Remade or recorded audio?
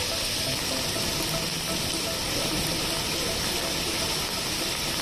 recorded